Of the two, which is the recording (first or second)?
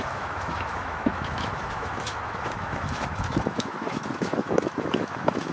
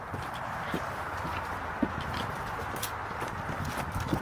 second